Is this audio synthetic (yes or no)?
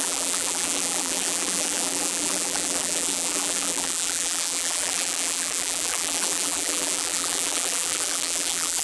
yes